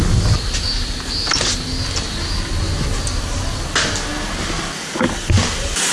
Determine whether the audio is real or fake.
real